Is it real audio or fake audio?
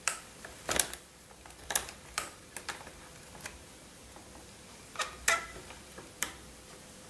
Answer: fake